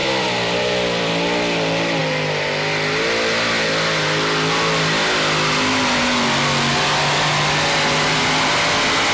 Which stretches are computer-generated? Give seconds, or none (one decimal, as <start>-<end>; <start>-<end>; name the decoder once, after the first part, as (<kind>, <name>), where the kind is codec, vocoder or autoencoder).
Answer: 0.0-1.1 (vocoder, BigVGAN v2)